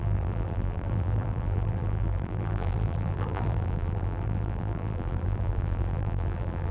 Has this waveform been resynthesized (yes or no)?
yes